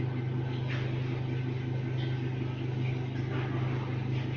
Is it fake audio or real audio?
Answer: real